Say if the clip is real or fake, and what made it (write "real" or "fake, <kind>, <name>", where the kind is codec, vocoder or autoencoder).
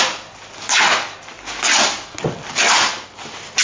real